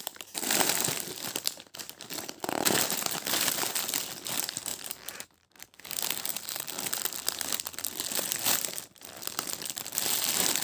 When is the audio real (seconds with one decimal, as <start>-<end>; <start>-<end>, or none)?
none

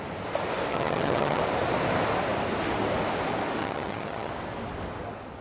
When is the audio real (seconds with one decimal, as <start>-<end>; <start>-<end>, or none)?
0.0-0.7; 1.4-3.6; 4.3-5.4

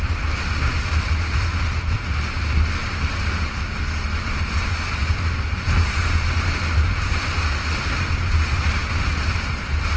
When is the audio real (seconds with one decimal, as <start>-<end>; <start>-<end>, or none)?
0.0-10.0

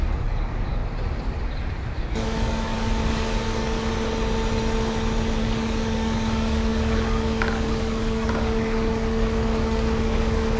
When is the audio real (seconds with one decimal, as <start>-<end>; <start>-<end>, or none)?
0.8-2.0; 3.9-5.4